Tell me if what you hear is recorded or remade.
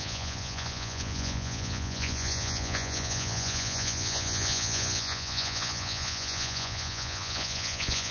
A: remade